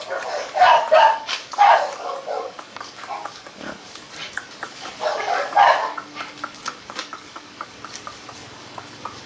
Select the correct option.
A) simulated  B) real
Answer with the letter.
A